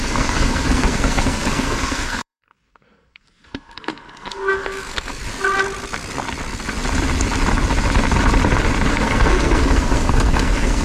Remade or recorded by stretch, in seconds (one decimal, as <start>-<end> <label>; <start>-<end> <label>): 0.0-5.2 remade; 5.2-8.9 recorded; 8.9-10.8 remade